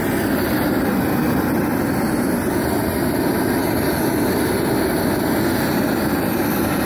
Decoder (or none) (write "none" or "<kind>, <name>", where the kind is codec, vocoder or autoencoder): none